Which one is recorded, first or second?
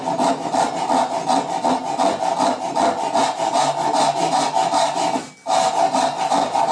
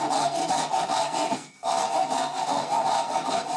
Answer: first